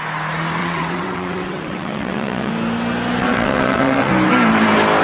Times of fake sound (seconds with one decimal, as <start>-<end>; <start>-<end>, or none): 0.6-2.5; 3.2-4.1